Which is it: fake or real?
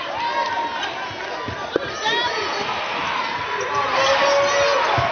real